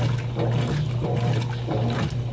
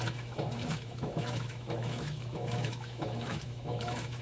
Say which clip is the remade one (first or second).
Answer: second